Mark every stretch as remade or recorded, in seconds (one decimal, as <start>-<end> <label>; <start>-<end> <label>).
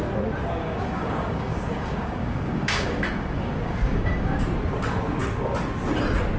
0.0-0.6 recorded; 0.6-4.4 remade; 4.4-6.4 recorded